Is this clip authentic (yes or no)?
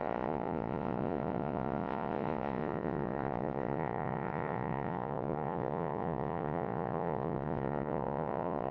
no